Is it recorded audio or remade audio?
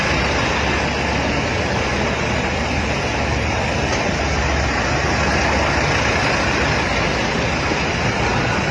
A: recorded